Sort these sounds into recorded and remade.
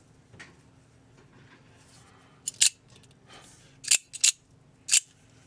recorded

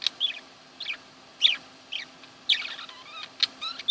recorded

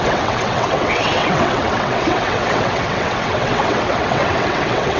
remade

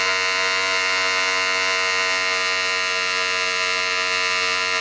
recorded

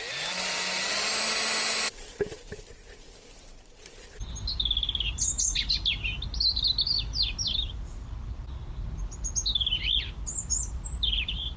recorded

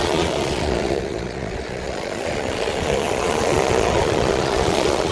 remade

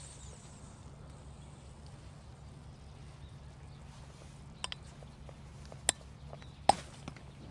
recorded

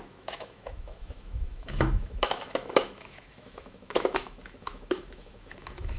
remade